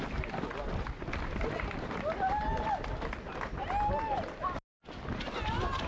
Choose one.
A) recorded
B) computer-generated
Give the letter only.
A